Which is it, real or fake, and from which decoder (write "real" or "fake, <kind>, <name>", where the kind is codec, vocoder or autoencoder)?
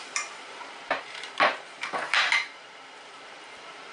fake, vocoder, BigVGAN v2